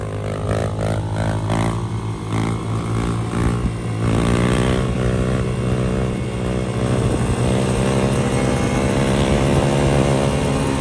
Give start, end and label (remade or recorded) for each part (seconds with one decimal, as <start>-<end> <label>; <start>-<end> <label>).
0.0-10.8 recorded